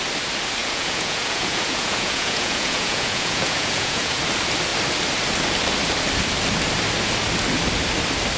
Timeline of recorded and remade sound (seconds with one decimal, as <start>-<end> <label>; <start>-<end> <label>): 0.0-0.6 recorded; 0.6-4.2 remade; 4.2-8.4 recorded